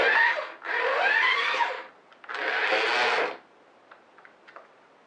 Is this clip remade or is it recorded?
recorded